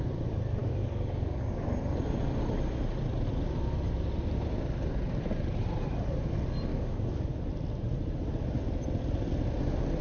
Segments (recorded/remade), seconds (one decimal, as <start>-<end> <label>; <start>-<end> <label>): 0.0-0.6 recorded; 0.6-1.7 remade; 1.7-6.7 recorded; 6.7-7.4 remade; 7.4-10.0 recorded